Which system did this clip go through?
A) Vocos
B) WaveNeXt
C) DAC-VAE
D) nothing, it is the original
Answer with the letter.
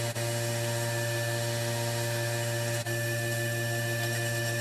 C